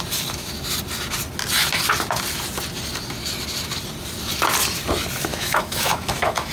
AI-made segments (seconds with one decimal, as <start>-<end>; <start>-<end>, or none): 5.3-6.5